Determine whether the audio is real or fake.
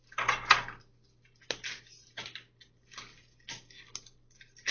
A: real